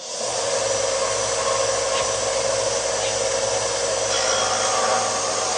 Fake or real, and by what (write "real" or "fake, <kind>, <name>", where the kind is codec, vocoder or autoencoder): real